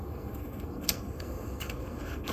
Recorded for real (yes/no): no